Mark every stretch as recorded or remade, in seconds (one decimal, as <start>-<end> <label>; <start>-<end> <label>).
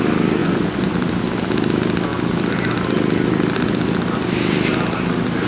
0.0-0.4 recorded; 0.4-0.9 remade; 0.9-5.5 recorded